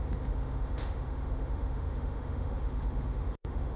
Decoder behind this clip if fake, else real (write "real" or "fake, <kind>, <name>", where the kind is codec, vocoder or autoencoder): fake, autoencoder, DAC-VAE